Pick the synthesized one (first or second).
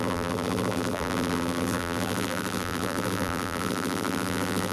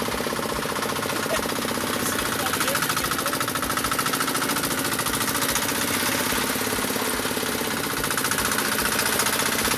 first